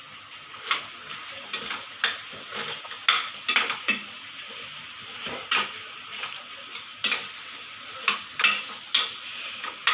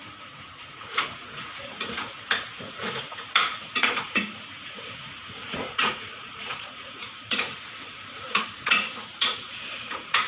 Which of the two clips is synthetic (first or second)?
second